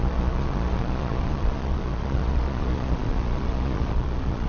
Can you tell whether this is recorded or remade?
remade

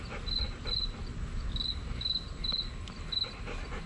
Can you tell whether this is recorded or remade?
recorded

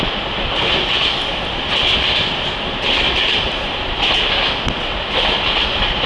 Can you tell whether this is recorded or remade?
recorded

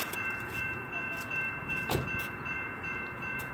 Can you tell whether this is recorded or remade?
remade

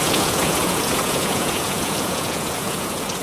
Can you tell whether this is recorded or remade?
remade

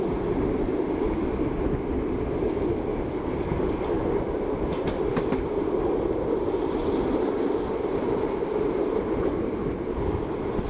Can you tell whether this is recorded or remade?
recorded